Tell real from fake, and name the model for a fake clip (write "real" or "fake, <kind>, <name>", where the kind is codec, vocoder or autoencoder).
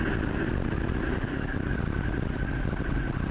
real